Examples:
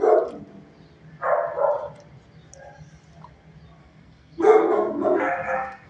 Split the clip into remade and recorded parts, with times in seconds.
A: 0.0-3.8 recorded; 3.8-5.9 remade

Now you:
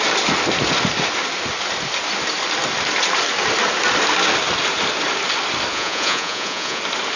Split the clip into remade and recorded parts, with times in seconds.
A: 0.0-5.7 recorded; 5.7-6.8 remade; 6.8-7.2 recorded

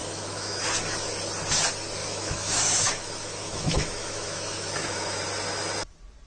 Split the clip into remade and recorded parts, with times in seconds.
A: 0.0-0.6 remade; 0.6-2.0 recorded; 2.0-5.2 remade; 5.2-6.3 recorded

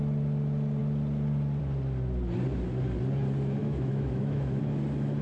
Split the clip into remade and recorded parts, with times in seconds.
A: 0.0-3.6 recorded; 3.6-4.6 remade; 4.6-5.2 recorded

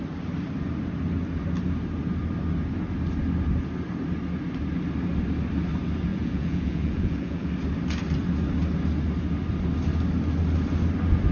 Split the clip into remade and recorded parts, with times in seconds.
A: 0.0-6.1 recorded; 6.1-7.5 remade; 7.5-11.3 recorded

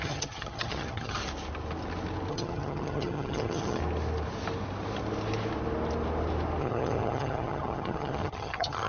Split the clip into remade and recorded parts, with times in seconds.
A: 0.0-1.2 remade; 1.2-2.3 recorded; 2.3-3.8 remade; 3.8-6.6 recorded; 6.6-8.9 remade